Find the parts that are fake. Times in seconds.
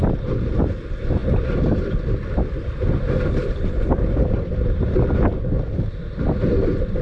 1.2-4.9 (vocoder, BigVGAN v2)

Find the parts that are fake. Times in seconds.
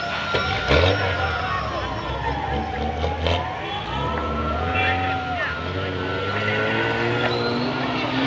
4.2-4.8 (vocoder, Vocos)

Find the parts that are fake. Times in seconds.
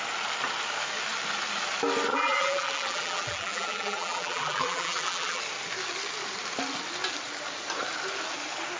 2.1-5.4 (vocoder, BigVGAN v2)